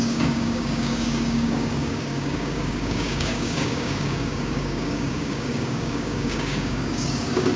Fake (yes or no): yes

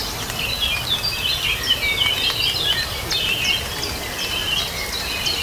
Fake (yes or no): no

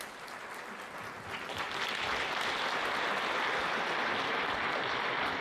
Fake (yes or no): no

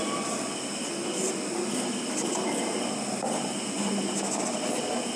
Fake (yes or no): no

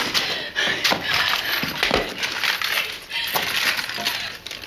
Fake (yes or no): no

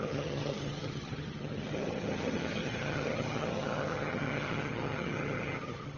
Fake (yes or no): yes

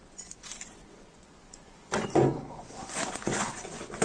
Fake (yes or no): yes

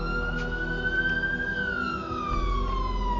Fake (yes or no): no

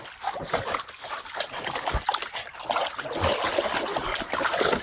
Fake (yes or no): no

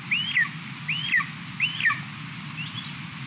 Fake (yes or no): no